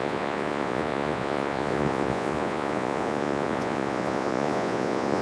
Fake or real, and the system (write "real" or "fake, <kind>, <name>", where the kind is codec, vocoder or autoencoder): fake, vocoder, Vocos